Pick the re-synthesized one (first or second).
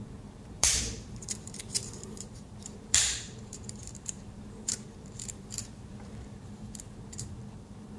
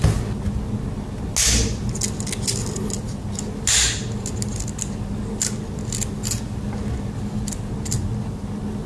first